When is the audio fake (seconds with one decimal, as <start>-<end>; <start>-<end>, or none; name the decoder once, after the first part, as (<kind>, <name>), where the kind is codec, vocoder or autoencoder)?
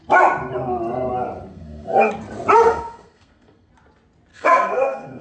1.5-2.1 (codec, SNAC); 2.7-3.7; 4.3-5.2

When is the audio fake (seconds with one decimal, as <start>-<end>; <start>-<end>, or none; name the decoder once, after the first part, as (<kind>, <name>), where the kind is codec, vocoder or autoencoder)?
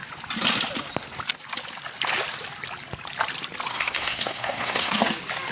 3.7-5.0 (codec, SNAC)